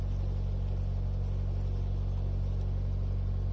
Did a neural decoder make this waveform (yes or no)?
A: no